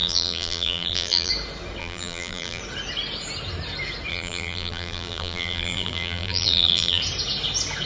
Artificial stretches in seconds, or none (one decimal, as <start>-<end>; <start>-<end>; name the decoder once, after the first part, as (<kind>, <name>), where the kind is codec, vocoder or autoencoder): 0.0-1.3 (vocoder, BigVGAN v2); 1.8-2.6; 4.1-7.0